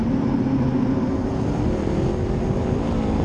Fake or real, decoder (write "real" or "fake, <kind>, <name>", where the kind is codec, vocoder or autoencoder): real